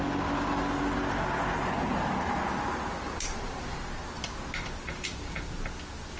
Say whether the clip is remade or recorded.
recorded